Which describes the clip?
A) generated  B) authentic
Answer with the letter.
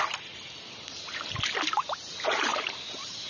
B